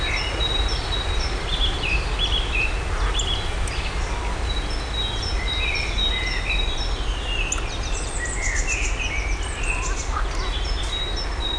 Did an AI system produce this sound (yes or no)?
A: no